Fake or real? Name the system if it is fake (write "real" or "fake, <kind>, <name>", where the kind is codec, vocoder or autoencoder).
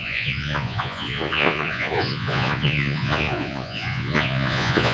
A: fake, vocoder, Vocos